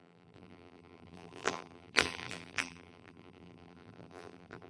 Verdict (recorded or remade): remade